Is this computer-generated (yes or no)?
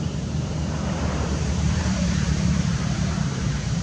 yes